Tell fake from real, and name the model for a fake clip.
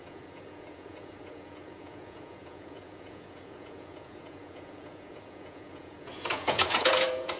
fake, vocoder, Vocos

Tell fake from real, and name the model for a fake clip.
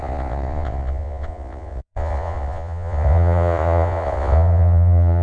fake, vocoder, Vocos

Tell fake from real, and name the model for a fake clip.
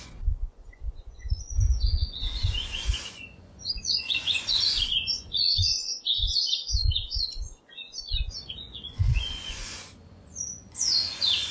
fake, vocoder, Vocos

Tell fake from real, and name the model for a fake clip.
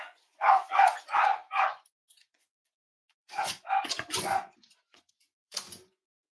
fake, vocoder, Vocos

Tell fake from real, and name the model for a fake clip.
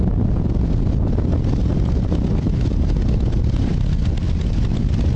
real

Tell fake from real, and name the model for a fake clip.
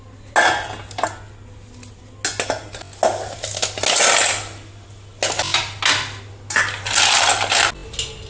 real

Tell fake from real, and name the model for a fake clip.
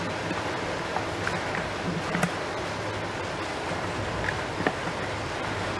real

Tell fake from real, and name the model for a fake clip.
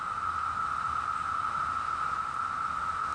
real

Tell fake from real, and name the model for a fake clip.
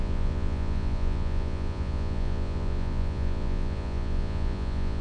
fake, vocoder, Vocos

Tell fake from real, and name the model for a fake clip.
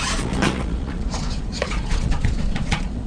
fake, vocoder, Vocos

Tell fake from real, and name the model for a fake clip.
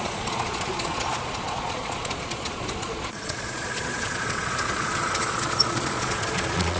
fake, vocoder, Vocos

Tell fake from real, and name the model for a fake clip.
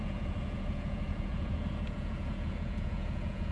fake, vocoder, Vocos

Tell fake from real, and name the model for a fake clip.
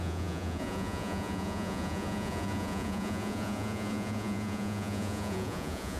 fake, vocoder, Vocos